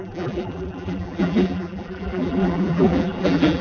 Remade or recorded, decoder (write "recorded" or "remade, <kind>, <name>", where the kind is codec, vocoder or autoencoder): remade, vocoder, BigVGAN v2